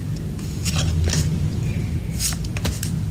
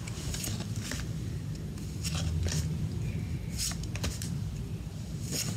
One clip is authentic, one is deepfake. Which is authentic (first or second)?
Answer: first